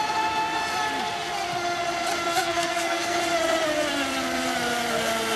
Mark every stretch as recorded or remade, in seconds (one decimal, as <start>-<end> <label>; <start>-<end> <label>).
0.0-2.3 recorded; 2.3-3.2 remade; 3.2-5.4 recorded